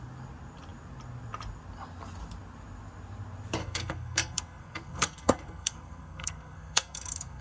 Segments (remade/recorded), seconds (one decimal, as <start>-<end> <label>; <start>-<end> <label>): 0.0-3.6 recorded; 3.6-7.4 remade